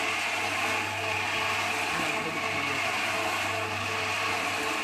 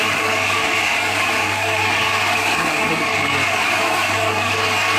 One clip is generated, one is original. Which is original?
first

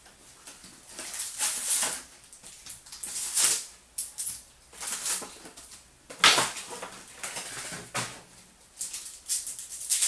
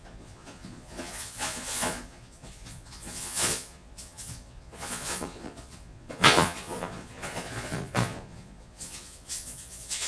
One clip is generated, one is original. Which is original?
first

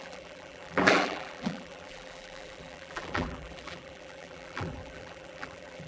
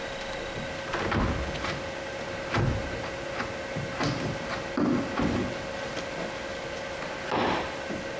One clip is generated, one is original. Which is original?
second